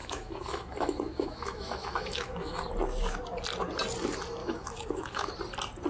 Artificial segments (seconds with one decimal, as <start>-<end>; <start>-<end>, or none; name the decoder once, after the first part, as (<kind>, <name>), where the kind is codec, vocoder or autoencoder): 0.0-2.6 (autoencoder, DAC-VAE); 4.4-5.3